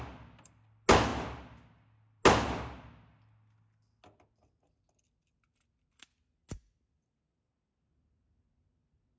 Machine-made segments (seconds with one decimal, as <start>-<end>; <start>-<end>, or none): none